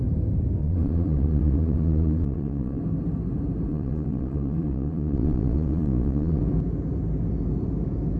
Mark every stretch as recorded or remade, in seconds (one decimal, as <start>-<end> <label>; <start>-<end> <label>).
0.0-0.6 recorded; 0.6-2.8 remade; 2.8-3.7 recorded; 3.7-6.4 remade; 6.4-8.2 recorded